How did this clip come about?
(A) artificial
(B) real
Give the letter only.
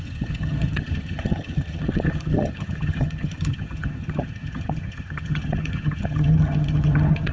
A